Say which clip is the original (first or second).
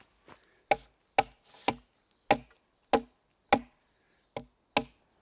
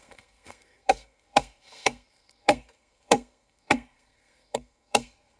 first